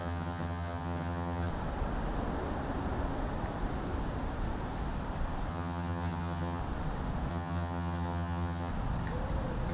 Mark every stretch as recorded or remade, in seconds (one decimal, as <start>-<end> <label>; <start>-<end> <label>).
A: 0.0-1.5 remade; 1.5-5.5 recorded; 5.5-6.6 remade; 6.6-7.3 recorded; 7.3-8.7 remade; 8.7-9.7 recorded